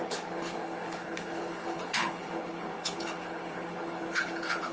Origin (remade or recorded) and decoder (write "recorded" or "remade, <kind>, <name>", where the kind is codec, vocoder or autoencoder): remade, codec, HILCodec